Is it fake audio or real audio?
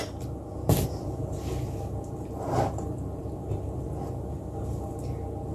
real